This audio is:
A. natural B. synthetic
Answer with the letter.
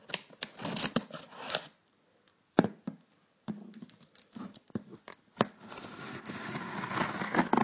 A